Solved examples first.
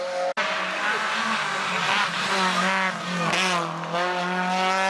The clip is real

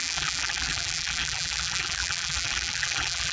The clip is fake